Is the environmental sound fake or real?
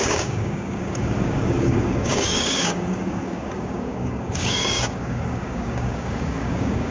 fake